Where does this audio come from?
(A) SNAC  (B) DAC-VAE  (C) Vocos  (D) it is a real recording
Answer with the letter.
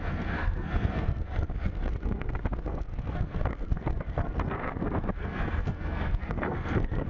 A